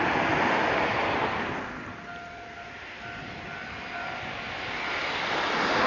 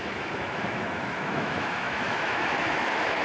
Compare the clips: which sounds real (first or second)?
first